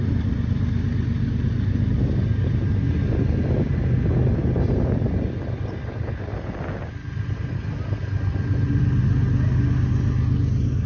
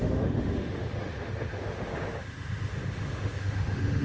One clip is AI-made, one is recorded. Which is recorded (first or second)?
first